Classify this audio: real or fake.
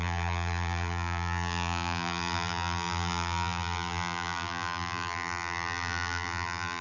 fake